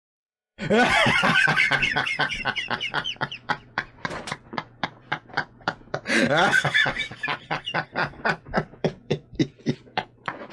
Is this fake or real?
fake